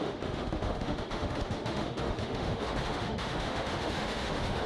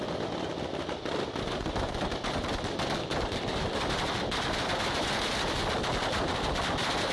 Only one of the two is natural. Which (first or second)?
second